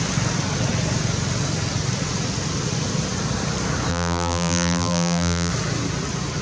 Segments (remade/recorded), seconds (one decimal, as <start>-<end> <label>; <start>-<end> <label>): 0.0-3.9 recorded; 3.9-5.5 remade; 5.5-6.4 recorded